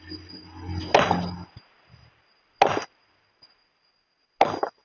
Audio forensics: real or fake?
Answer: real